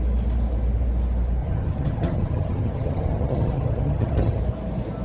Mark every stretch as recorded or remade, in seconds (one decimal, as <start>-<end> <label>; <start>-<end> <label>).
0.0-1.4 recorded; 1.4-4.4 remade; 4.4-5.0 recorded

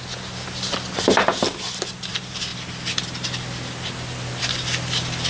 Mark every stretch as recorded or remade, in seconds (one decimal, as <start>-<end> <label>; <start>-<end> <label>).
0.0-5.3 recorded

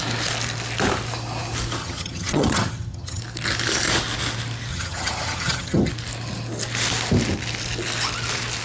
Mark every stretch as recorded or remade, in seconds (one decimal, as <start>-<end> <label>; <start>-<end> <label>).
0.0-1.8 recorded; 1.8-3.2 remade; 3.2-4.7 recorded; 4.7-5.9 remade; 5.9-8.6 recorded

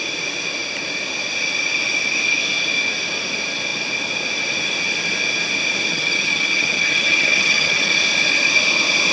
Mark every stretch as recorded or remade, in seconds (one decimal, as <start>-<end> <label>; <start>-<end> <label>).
0.0-5.9 recorded; 5.9-7.9 remade; 7.9-9.1 recorded

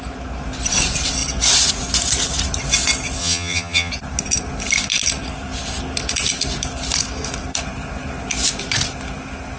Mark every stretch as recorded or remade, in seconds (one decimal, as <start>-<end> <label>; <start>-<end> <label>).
0.0-3.2 recorded; 3.2-3.9 remade; 3.9-9.6 recorded

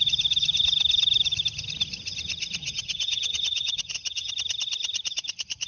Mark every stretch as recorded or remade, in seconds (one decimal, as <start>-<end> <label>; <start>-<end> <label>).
0.0-2.6 recorded; 2.6-4.3 remade; 4.3-5.7 recorded

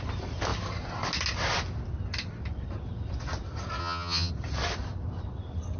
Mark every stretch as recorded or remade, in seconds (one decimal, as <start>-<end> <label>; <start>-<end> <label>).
0.0-3.8 recorded; 3.8-4.3 remade; 4.3-5.8 recorded

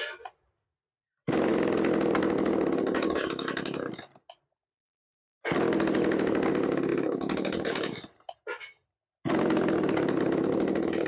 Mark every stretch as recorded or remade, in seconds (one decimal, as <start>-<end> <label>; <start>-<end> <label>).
0.0-11.1 recorded